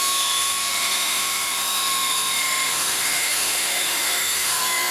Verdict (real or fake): fake